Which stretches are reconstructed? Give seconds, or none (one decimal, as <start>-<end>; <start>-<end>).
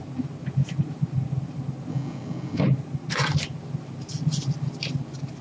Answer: 1.9-2.6